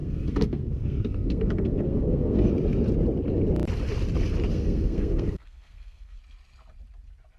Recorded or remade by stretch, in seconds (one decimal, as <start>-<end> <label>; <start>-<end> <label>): 0.0-2.5 remade; 2.5-4.5 recorded; 4.5-6.2 remade; 6.2-7.4 recorded